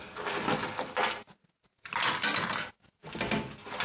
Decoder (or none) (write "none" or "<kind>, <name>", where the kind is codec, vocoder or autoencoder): none